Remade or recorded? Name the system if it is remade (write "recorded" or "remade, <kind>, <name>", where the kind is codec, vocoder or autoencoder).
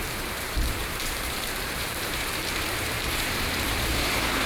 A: remade, vocoder, BigVGAN v2